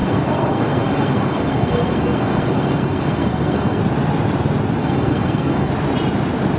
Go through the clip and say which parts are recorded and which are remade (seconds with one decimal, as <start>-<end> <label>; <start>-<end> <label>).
0.0-3.8 remade; 3.8-4.8 recorded; 4.8-5.7 remade; 5.7-6.6 recorded